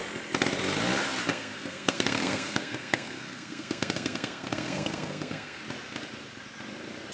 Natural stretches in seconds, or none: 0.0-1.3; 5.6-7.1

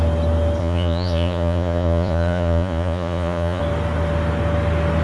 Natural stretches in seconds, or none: 0.0-0.6; 3.6-5.0

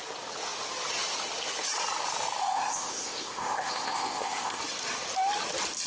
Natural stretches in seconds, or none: 0.0-2.4; 4.6-5.9

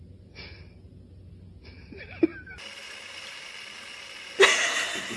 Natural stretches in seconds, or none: 0.0-5.2